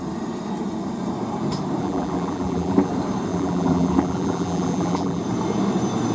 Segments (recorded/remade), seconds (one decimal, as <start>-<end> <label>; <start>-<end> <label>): 0.0-1.8 recorded; 1.8-2.9 remade; 2.9-3.3 recorded; 3.3-5.2 remade; 5.2-6.1 recorded